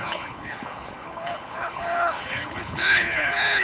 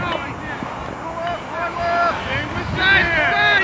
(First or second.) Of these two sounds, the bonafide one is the second